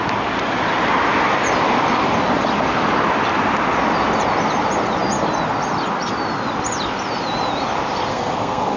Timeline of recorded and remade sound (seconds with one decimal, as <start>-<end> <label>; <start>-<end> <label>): 0.0-8.1 recorded; 8.1-8.8 remade